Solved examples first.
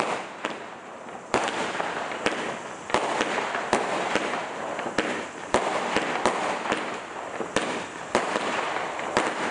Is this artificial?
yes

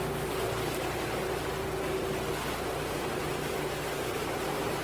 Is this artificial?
no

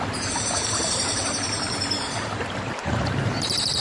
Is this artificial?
yes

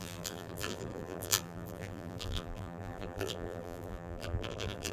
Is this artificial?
yes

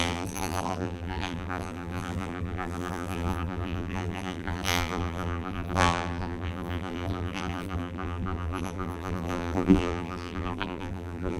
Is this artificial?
yes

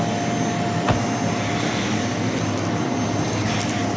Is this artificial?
no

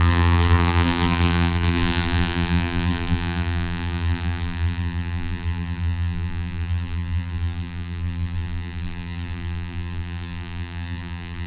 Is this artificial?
yes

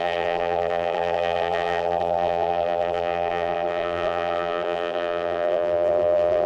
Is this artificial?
yes